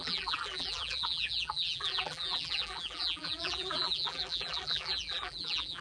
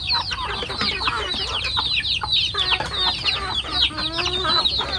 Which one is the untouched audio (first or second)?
second